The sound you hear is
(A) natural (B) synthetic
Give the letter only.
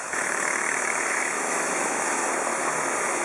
B